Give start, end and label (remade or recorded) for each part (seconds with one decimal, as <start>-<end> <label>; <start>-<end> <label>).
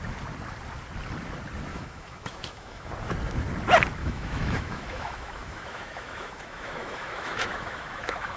0.0-1.7 recorded; 1.7-2.9 remade; 2.9-4.0 recorded; 4.0-8.4 remade